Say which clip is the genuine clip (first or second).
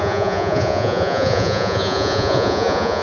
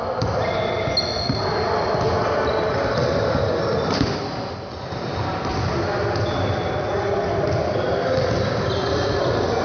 second